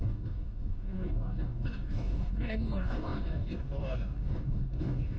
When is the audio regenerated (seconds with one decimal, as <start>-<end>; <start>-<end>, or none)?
0.0-5.2